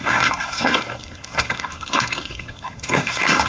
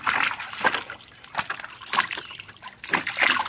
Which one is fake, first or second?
first